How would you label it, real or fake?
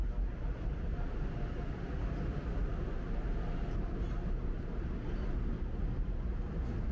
real